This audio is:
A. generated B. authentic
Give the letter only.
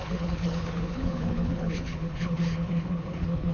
A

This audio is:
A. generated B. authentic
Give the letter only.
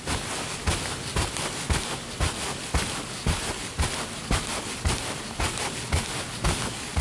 B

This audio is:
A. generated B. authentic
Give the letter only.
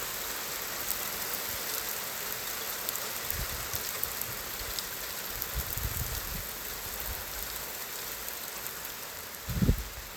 B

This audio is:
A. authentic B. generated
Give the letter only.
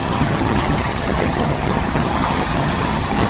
B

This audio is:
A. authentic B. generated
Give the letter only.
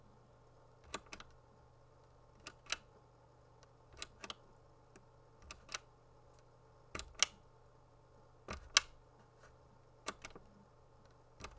A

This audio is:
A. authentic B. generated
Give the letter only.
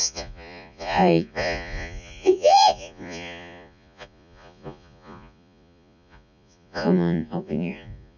B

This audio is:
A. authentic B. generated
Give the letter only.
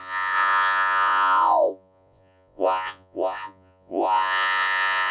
B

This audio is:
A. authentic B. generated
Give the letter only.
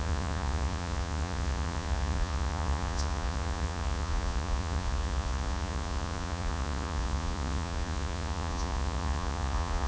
B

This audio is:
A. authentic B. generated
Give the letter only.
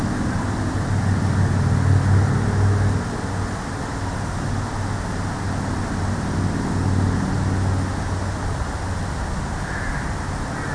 A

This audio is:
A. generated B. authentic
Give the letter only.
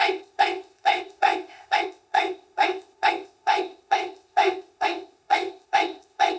A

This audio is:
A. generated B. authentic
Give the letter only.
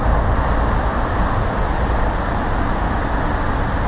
B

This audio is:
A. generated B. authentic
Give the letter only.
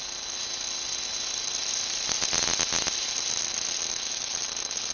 B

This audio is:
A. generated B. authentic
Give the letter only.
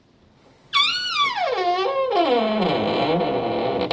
B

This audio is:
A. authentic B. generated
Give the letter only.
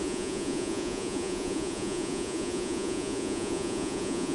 B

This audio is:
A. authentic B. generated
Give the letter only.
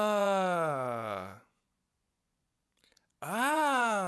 B